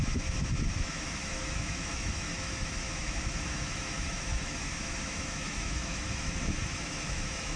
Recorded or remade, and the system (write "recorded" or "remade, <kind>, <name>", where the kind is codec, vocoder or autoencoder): remade, autoencoder, DAC-VAE